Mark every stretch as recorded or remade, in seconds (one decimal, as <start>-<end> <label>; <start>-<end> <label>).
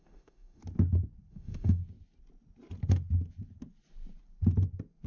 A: 0.0-0.6 remade; 0.6-1.3 recorded; 1.3-1.8 remade; 1.8-5.1 recorded